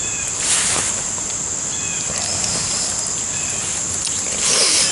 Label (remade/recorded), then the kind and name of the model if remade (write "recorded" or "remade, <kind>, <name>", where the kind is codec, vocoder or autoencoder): recorded